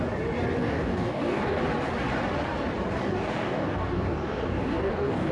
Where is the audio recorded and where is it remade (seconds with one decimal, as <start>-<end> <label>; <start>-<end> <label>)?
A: 0.0-0.6 recorded; 0.6-1.6 remade; 1.6-3.0 recorded; 3.0-5.3 remade